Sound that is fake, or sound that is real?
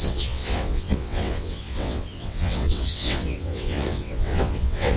fake